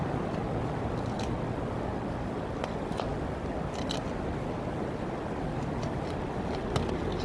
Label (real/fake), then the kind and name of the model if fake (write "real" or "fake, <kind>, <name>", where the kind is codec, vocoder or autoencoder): real